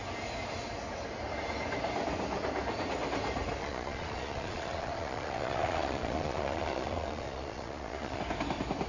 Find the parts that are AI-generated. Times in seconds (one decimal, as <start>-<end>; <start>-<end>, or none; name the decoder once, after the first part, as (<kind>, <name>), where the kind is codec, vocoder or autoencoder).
3.6-8.2 (vocoder, Vocos)